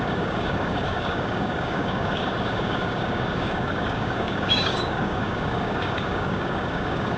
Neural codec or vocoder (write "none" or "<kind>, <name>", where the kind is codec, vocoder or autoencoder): codec, DAC